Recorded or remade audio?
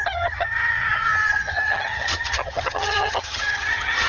remade